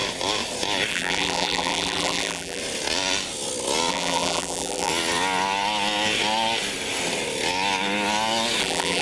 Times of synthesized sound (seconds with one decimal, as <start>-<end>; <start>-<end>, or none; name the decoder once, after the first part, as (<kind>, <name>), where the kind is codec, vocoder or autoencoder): 0.9-2.6 (vocoder, BigVGAN v2); 3.9-4.9; 8.6-9.0